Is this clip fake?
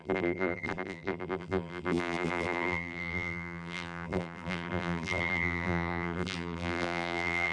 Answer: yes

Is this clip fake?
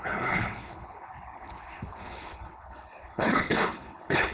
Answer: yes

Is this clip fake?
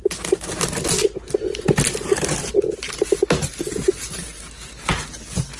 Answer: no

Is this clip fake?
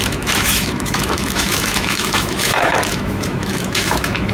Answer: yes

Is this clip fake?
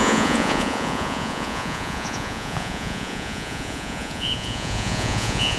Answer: yes